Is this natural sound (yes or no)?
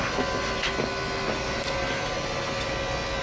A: yes